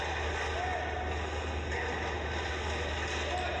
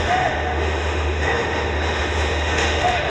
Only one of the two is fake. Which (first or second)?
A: second